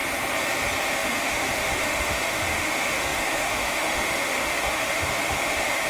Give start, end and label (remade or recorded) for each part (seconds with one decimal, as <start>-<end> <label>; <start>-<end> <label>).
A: 0.0-0.9 recorded; 0.9-5.9 remade